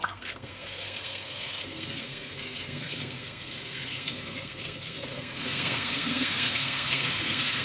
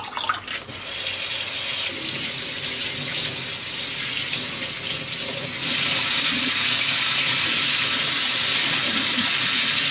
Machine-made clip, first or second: first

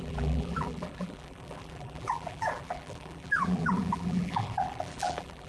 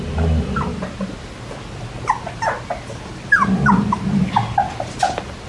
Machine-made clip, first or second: first